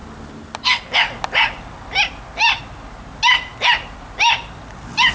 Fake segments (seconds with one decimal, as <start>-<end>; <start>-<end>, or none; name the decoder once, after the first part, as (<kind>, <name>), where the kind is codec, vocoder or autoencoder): none